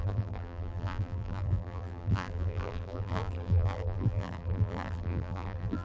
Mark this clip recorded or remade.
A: remade